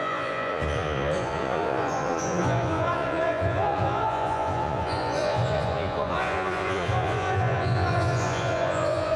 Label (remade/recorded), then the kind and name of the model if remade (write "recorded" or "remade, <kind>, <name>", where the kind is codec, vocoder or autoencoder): remade, vocoder, Vocos